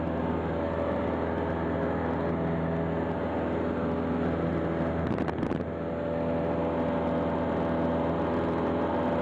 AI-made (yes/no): no